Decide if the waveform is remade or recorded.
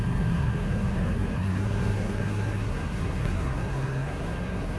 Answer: remade